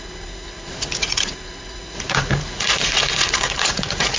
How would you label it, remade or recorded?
remade